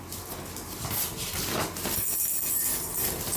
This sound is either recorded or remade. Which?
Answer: recorded